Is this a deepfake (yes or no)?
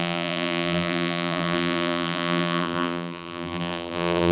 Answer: yes